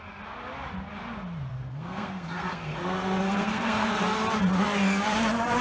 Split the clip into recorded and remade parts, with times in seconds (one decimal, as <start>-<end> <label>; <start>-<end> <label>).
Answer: 0.0-1.5 recorded; 1.5-4.0 remade; 4.0-5.6 recorded